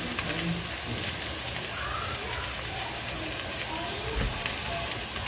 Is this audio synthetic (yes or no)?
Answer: no